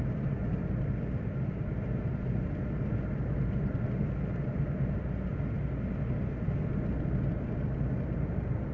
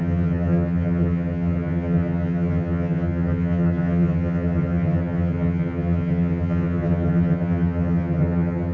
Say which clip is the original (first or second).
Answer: first